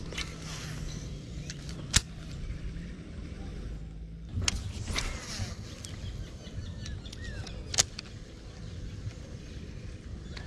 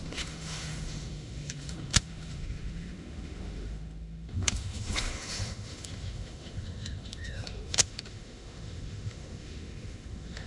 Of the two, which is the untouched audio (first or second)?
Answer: first